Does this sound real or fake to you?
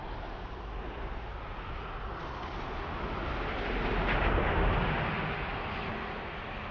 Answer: real